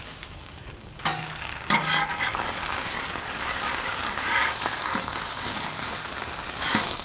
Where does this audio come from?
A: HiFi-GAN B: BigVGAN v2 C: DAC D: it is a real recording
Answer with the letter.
C